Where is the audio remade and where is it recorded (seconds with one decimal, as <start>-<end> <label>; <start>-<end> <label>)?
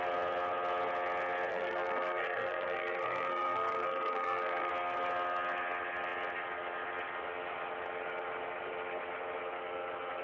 0.0-1.5 recorded; 1.5-4.7 remade; 4.7-10.2 recorded